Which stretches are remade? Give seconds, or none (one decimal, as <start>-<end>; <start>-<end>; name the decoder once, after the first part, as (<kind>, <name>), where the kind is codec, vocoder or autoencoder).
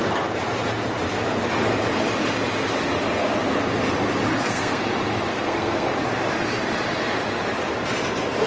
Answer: 4.3-4.8 (codec, SNAC); 5.3-5.9